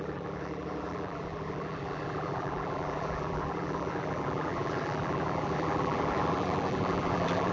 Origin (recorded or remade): remade